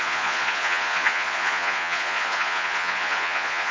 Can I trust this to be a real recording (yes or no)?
no